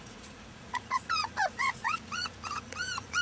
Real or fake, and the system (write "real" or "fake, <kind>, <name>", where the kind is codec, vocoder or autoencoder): fake, vocoder, Vocos